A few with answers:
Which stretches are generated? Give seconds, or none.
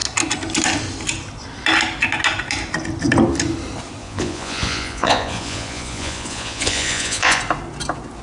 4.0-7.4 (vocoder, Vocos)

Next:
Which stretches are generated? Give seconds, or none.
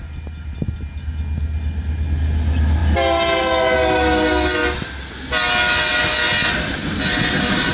none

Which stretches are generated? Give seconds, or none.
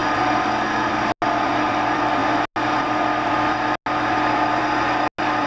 none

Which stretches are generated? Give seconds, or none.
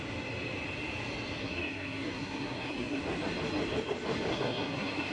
1.4-3.0 (codec, SNAC); 4.3-5.1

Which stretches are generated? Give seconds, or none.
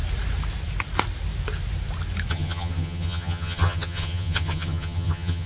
2.3-5.5 (vocoder, HiFi-GAN)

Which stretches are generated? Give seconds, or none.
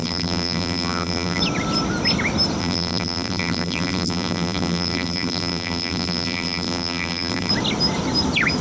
0.0-1.4 (vocoder, BigVGAN v2); 2.6-7.5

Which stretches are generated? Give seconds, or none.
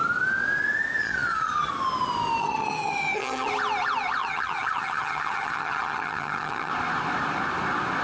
1.0-1.7 (vocoder, HiFi-GAN); 2.4-3.5; 4.2-6.7